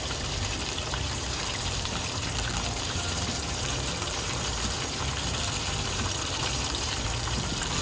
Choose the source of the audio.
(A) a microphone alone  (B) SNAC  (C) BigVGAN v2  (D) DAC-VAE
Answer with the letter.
C